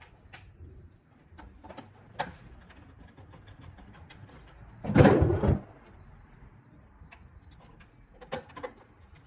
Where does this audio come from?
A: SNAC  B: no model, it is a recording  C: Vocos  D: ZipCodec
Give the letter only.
B